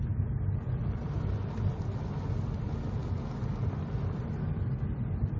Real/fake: real